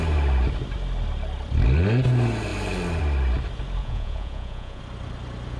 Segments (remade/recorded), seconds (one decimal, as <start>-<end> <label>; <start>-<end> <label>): 0.0-3.8 recorded; 3.8-4.8 remade; 4.8-5.6 recorded